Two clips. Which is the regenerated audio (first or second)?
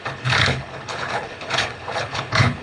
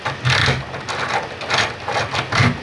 first